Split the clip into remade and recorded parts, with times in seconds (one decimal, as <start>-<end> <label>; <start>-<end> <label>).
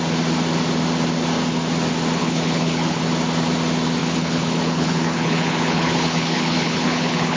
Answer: 0.0-2.2 recorded; 2.2-3.0 remade; 3.0-4.0 recorded; 4.0-7.4 remade